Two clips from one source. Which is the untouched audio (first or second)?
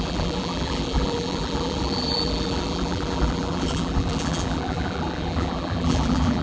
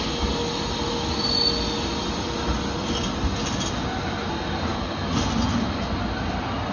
second